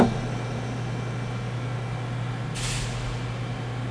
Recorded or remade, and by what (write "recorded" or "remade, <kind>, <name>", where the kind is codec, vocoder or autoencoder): recorded